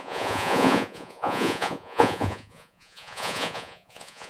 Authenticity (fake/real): fake